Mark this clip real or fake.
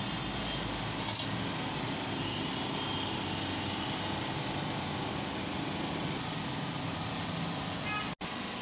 real